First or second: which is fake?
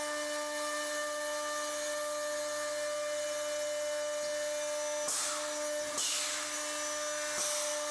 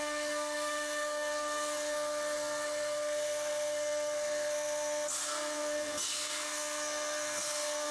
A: second